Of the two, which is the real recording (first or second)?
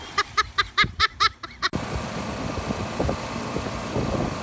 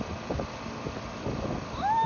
second